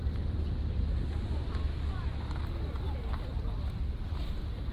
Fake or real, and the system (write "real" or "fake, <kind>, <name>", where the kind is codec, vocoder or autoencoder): real